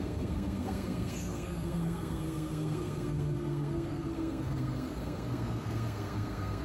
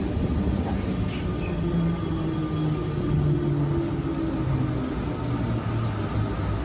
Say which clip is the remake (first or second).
first